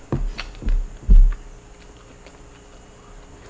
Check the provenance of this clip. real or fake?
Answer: real